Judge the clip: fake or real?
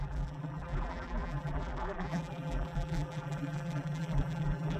fake